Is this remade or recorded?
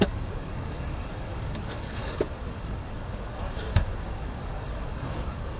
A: remade